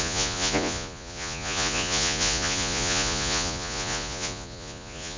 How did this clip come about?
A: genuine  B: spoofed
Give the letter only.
B